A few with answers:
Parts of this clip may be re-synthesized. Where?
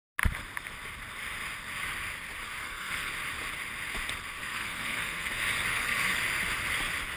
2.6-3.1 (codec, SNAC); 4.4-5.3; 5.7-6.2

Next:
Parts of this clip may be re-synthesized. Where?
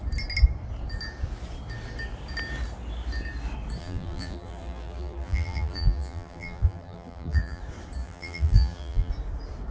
3.8-7.6 (vocoder, BigVGAN v2); 8.0-9.1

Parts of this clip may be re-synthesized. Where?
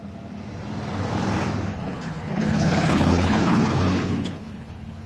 1.7-5.1 (codec, HILCodec)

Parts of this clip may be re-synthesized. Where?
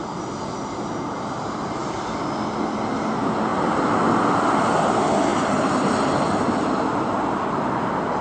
none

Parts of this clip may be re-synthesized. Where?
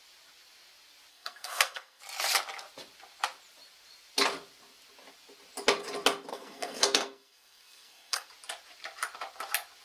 1.1-2.0 (codec, SNAC); 6.3-8.3